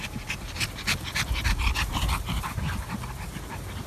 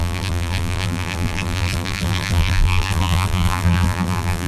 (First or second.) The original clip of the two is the first